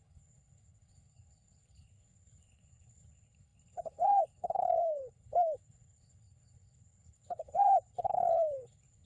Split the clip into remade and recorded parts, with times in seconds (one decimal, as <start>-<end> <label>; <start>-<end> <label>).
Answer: 0.0-9.1 remade